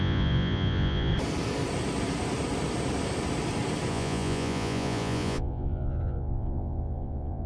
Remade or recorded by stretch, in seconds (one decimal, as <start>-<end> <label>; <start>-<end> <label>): 0.0-1.1 remade; 1.1-3.9 recorded; 3.9-7.5 remade